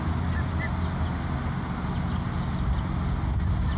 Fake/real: real